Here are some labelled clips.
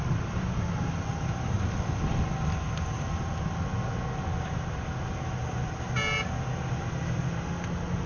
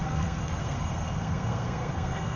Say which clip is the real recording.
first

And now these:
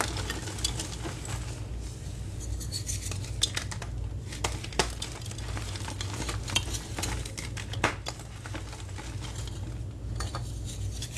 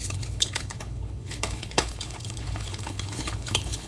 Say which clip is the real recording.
first